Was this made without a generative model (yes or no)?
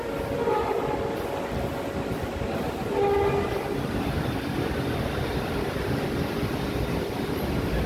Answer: yes